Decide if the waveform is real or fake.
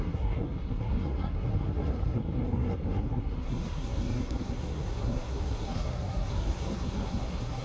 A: fake